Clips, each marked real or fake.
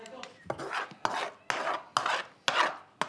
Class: real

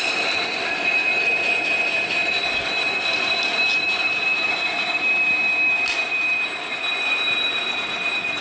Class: real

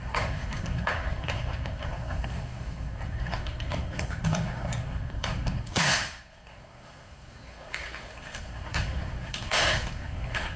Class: fake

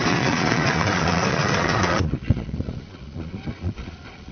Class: fake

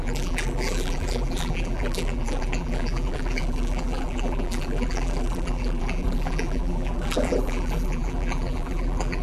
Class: fake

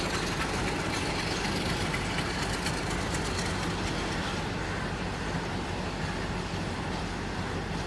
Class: real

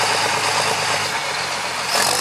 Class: fake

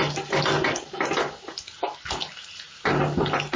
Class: real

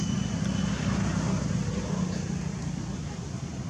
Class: real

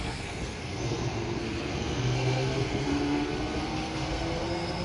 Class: fake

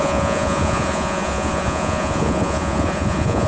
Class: fake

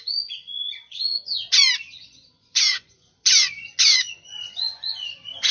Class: fake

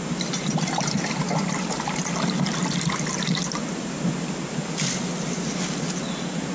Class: real